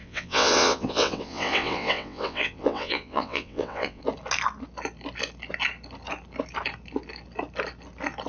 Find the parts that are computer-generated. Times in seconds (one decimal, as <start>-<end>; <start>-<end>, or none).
0.0-4.0

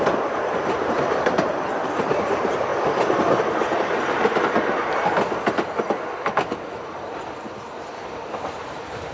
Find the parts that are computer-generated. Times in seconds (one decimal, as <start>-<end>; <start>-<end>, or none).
0.0-2.7; 6.8-9.1

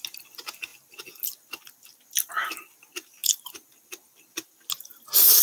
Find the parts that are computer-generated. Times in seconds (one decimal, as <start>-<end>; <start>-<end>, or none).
none

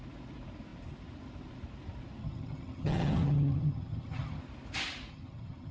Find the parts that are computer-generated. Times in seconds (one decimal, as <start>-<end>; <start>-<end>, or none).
2.2-4.4; 5.1-5.7

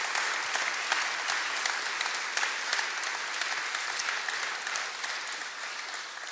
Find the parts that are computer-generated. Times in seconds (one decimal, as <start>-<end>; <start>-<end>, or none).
none